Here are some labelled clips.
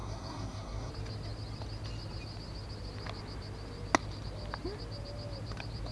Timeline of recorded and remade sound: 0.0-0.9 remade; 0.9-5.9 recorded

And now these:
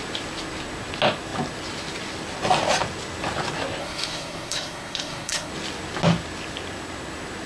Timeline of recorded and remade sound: 0.0-3.8 recorded; 3.8-5.5 remade; 5.5-7.5 recorded

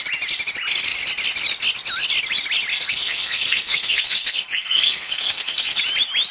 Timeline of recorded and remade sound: 0.0-2.7 recorded; 2.7-5.8 remade; 5.8-6.3 recorded